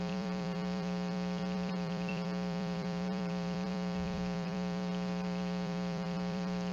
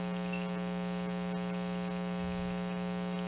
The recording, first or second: second